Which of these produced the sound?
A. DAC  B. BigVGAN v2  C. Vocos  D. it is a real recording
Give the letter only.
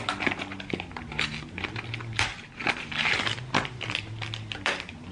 B